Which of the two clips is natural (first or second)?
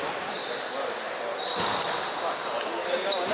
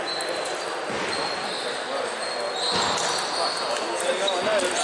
second